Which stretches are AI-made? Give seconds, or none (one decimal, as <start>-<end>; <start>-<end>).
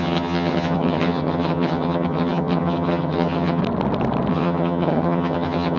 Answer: 0.0-3.6; 4.3-5.8